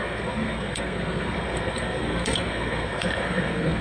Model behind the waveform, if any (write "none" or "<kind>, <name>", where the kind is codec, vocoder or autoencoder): codec, SNAC